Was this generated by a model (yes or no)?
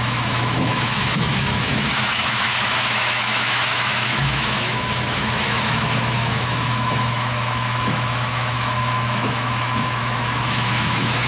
yes